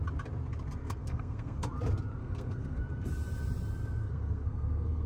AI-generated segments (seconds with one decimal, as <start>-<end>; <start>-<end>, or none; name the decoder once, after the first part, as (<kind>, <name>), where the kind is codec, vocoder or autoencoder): 0.8-1.7 (codec, SNAC); 2.2-2.8; 4.0-5.1